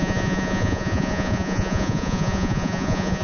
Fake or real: fake